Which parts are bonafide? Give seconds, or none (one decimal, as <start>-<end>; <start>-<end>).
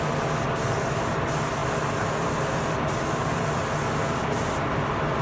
0.0-5.2